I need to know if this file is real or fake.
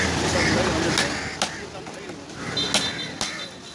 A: real